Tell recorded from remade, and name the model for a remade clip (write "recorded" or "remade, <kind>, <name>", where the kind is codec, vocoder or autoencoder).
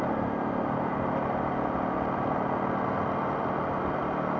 recorded